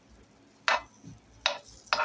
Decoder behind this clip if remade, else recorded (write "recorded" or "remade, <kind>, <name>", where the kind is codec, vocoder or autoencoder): recorded